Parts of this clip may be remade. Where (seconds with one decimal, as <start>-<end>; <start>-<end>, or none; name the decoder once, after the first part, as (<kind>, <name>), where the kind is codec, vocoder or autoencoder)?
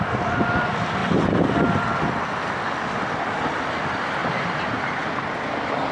none